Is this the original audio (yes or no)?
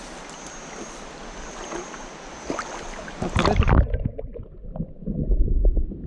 yes